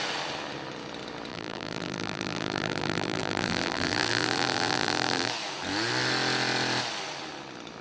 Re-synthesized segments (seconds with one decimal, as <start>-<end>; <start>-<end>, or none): 1.3-5.3